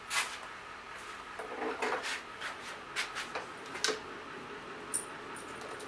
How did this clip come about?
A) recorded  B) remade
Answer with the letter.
A